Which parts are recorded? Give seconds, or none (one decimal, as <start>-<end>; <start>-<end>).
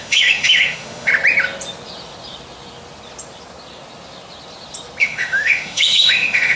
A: 1.1-5.0